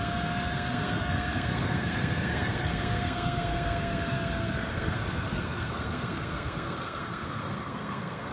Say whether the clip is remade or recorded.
remade